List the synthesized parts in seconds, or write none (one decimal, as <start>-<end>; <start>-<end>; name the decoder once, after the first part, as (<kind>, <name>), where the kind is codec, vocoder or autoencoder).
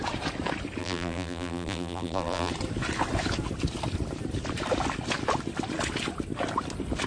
0.8-2.5 (vocoder, BigVGAN v2)